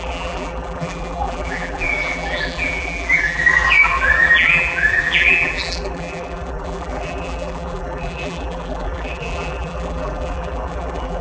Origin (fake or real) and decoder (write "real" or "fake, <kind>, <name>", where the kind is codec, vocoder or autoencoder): fake, vocoder, BigVGAN v2